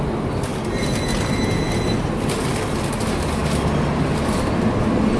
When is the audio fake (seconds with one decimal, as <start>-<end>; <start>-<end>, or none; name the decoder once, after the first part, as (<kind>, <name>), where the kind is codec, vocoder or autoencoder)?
none